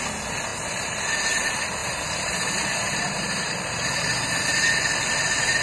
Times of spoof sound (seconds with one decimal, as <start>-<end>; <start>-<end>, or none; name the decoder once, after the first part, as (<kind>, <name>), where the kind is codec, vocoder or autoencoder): 0.5-1.0 (vocoder, BigVGAN v2); 1.8-4.9